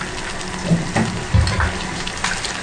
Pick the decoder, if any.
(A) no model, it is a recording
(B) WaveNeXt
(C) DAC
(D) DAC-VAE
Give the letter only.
A